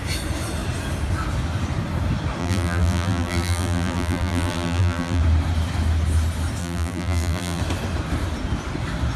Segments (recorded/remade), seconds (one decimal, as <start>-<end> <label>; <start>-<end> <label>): 0.0-2.4 recorded; 2.4-5.2 remade; 5.2-6.6 recorded; 6.6-7.6 remade; 7.6-9.2 recorded